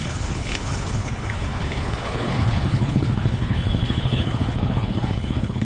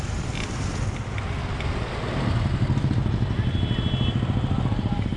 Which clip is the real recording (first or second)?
second